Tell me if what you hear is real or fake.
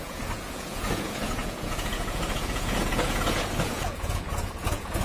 fake